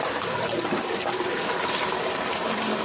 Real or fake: fake